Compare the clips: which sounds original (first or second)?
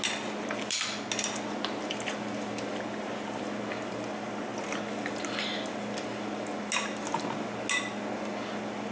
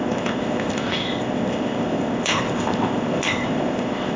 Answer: first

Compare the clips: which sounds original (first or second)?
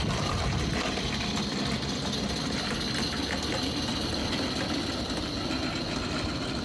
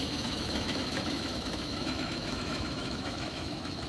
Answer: first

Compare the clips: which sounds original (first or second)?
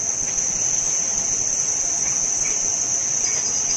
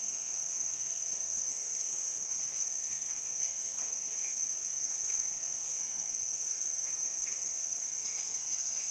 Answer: first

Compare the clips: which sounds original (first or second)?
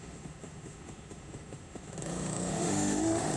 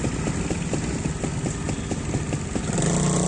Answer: second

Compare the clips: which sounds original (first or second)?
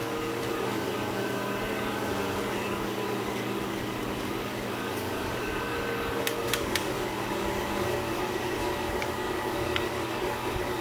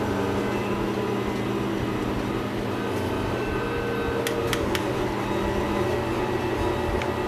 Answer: second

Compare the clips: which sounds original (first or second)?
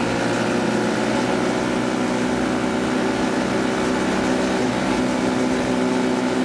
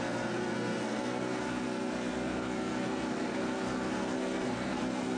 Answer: first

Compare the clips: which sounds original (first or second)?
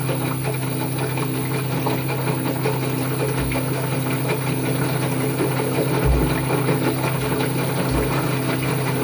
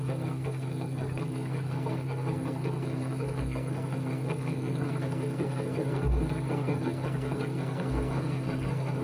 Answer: first